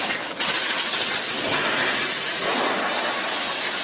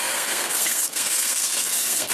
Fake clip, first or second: second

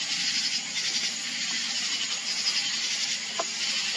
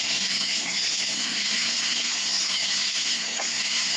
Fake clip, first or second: second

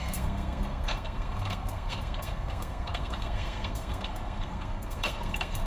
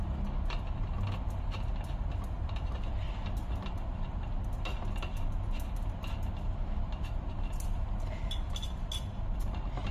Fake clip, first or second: first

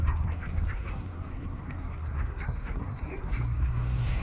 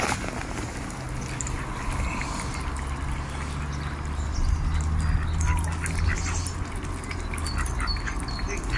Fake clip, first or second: first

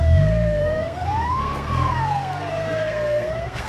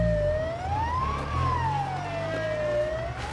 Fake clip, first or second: first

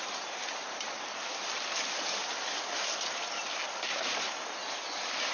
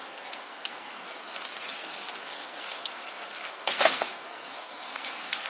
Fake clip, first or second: second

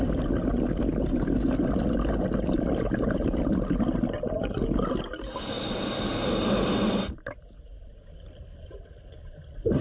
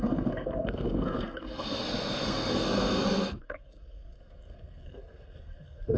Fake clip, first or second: second